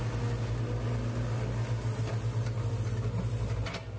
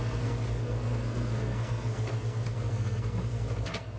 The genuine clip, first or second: first